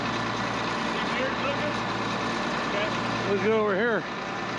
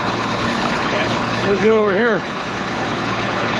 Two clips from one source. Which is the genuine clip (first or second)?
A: first